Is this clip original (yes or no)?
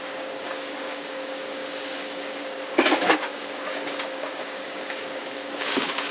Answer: no